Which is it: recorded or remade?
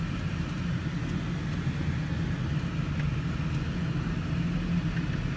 recorded